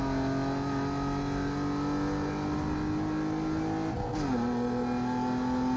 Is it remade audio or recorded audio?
recorded